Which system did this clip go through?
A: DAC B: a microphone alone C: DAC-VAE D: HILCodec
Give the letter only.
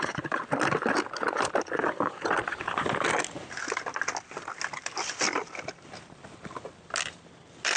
B